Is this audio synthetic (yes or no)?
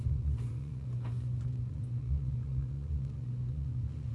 yes